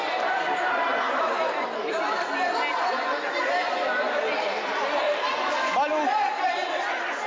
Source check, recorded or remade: recorded